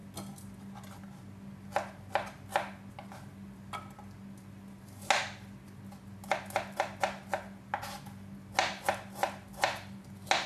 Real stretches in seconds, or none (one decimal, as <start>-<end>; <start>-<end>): 0.0-10.5